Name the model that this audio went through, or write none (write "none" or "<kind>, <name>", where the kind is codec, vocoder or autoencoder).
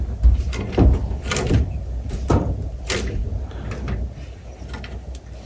none